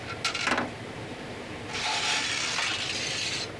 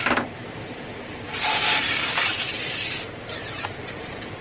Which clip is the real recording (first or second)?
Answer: first